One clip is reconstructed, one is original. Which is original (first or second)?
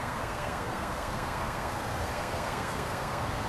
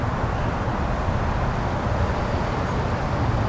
second